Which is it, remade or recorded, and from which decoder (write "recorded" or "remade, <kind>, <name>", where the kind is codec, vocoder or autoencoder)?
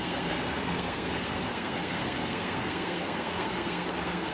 remade, codec, SNAC